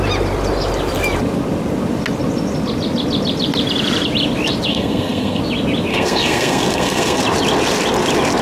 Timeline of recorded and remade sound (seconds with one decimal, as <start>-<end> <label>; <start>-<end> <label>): 0.0-4.7 recorded; 4.7-5.4 remade; 5.4-5.9 recorded; 5.9-7.2 remade; 7.2-8.4 recorded